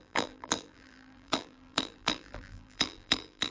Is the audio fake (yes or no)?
yes